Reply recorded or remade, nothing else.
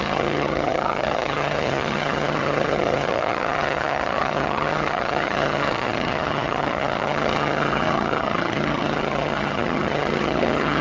remade